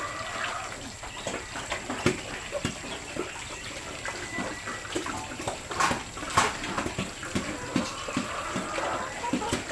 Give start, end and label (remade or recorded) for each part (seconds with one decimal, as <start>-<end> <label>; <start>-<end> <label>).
0.0-9.7 recorded

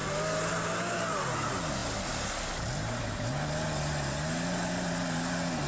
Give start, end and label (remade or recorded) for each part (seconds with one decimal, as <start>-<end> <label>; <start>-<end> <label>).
0.0-5.7 recorded

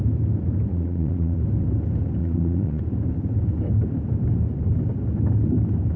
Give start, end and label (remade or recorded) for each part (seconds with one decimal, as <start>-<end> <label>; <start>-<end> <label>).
0.0-0.7 recorded; 0.7-1.4 remade; 1.4-2.2 recorded; 2.2-2.8 remade; 2.8-6.0 recorded

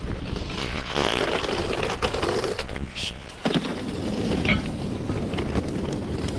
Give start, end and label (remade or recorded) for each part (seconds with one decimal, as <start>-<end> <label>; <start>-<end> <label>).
0.0-0.6 recorded; 0.6-1.2 remade; 1.2-2.6 recorded; 2.6-3.3 remade; 3.3-6.4 recorded

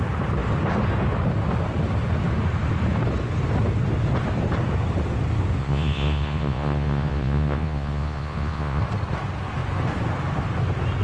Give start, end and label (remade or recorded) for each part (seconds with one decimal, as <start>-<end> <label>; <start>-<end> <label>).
0.0-5.6 recorded; 5.6-8.8 remade; 8.8-11.0 recorded